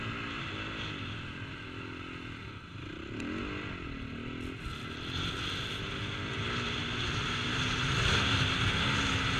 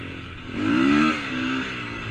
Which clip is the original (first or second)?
first